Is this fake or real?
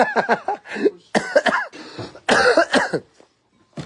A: real